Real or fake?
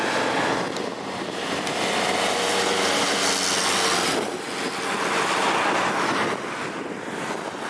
real